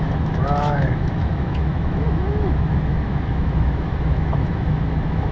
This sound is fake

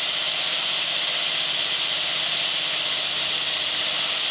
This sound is real